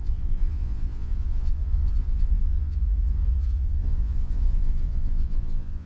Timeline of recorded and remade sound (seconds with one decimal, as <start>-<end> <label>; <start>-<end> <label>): 0.0-5.9 remade